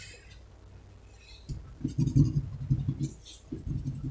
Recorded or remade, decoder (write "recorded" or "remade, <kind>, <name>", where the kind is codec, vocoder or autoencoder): recorded